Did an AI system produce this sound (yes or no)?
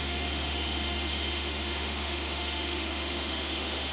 yes